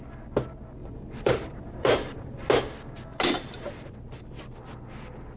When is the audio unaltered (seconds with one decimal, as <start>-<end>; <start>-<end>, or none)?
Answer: 0.0-0.8; 2.5-3.1; 3.8-5.4